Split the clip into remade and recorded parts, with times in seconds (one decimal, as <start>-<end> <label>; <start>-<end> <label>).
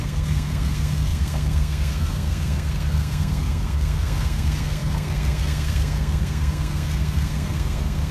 0.0-8.1 remade